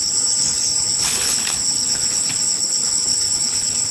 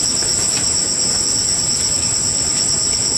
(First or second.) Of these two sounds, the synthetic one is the first